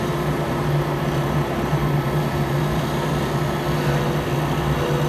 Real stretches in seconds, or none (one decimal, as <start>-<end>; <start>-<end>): 1.8-5.1